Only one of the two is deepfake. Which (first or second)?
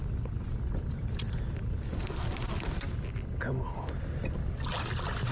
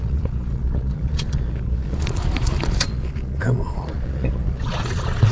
second